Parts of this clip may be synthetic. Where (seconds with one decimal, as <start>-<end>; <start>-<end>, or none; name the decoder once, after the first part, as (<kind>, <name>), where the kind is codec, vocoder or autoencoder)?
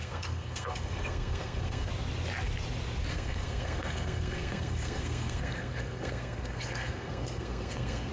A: 0.0-1.9 (codec, SNAC); 3.1-8.1